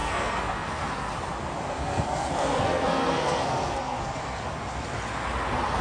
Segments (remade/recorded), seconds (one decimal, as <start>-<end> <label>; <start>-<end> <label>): 0.0-1.1 remade; 1.1-1.7 recorded; 1.7-4.4 remade; 4.4-5.8 recorded